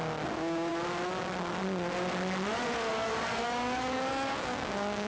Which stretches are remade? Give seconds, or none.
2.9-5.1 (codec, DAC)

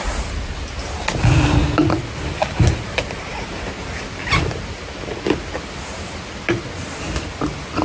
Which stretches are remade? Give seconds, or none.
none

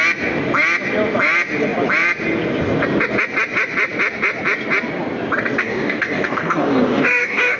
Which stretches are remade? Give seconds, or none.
5.6-7.6 (codec, DAC)

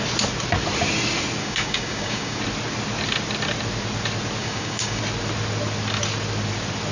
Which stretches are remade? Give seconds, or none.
1.4-2.4 (codec, DAC); 4.4-5.0

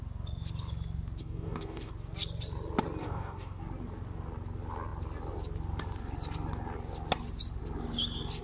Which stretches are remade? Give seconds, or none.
1.2-1.9 (codec, DAC); 3.0-3.6

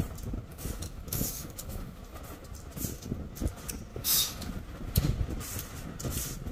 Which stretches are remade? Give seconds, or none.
0.5-2.0 (codec, DAC); 3.9-4.5